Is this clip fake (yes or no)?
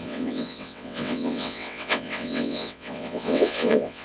yes